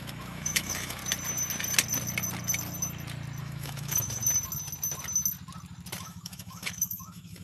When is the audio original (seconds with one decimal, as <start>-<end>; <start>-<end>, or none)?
1.0-3.4; 4.2-6.0